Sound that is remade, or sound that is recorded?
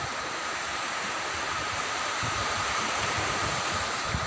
remade